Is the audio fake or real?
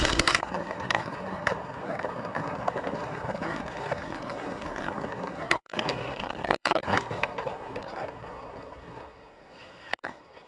fake